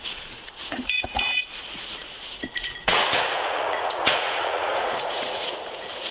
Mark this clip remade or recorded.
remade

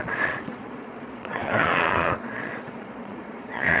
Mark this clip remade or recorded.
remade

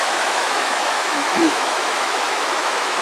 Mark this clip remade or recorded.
remade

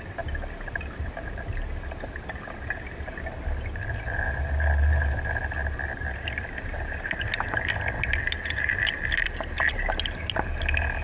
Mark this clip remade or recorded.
recorded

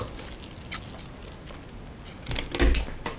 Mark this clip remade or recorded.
recorded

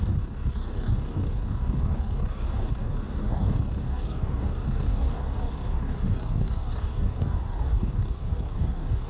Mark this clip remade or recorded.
remade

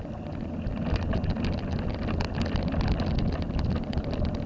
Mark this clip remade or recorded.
recorded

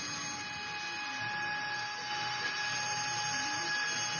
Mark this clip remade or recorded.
recorded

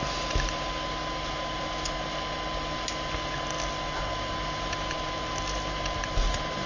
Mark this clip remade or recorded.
recorded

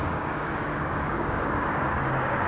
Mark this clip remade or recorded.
remade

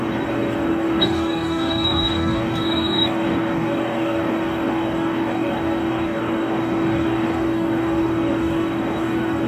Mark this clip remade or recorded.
remade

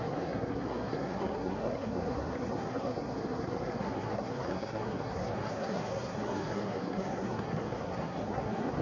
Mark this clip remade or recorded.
remade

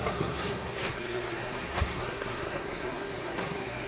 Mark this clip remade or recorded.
remade